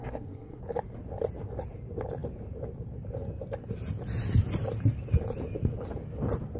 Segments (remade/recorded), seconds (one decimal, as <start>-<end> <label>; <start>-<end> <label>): 0.0-0.6 remade; 0.6-6.6 recorded